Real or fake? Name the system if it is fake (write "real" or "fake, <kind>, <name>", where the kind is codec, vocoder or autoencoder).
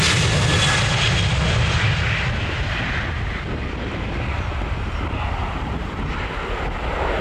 real